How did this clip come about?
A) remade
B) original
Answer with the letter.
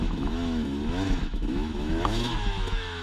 A